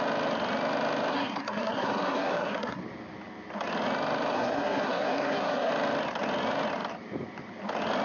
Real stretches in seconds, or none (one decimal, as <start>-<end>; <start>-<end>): 0.0-1.1; 2.8-4.3; 5.7-8.0